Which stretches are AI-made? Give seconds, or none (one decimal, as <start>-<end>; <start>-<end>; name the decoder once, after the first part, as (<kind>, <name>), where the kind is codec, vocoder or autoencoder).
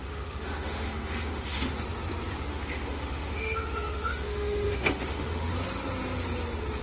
0.0-1.8 (autoencoder, DAC-VAE); 2.5-5.5